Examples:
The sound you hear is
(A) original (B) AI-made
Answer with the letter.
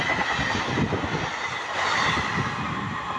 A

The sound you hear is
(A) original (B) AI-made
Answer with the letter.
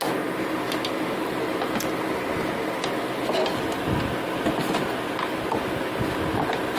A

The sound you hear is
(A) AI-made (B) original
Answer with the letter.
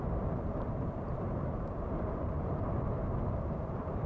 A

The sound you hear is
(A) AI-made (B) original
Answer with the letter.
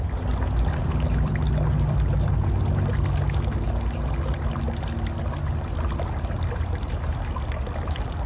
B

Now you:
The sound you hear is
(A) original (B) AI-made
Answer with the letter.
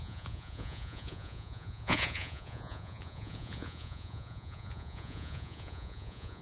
B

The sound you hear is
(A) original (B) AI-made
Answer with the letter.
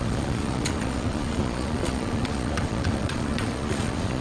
B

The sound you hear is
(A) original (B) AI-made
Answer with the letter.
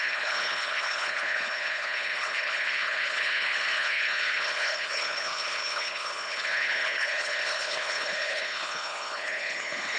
B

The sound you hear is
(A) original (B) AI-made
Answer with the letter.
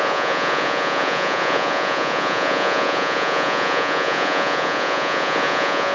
B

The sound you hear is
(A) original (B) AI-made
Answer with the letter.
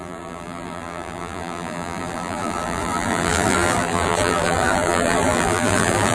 B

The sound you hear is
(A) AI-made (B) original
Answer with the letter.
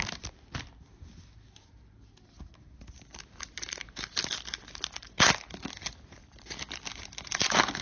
B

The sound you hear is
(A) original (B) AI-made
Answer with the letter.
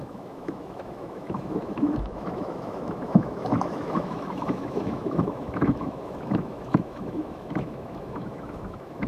B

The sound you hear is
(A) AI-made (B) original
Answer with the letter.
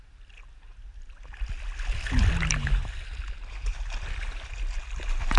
B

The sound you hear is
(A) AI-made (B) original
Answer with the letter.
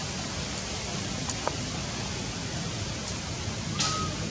B